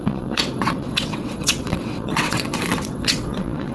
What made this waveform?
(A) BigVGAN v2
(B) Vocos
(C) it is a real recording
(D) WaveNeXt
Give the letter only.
D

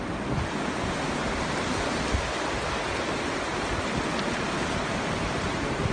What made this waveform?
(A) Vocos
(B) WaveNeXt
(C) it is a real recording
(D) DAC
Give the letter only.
C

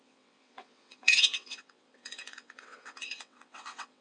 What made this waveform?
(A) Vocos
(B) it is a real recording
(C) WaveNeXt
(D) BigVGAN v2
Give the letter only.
C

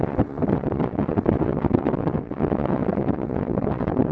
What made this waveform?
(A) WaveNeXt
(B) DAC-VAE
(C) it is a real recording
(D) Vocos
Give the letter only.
A